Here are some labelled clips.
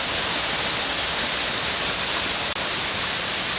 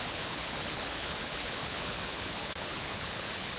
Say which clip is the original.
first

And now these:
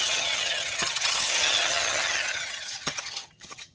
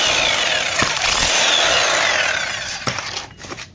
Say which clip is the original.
second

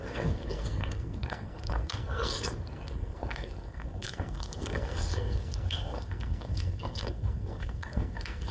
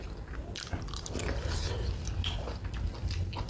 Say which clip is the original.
second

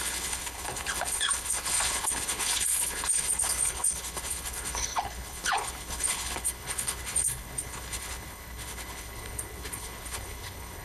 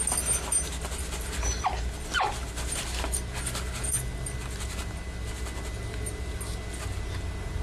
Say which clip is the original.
second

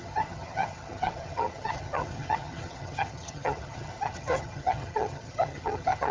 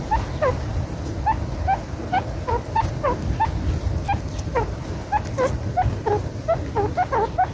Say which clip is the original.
second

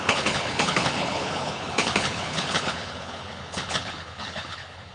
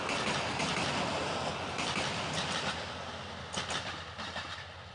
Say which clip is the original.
second